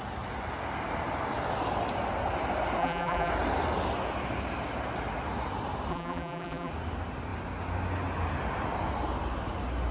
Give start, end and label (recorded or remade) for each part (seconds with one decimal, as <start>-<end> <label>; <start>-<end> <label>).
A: 0.0-2.8 recorded; 2.8-3.3 remade; 3.3-5.9 recorded; 5.9-6.7 remade; 6.7-9.9 recorded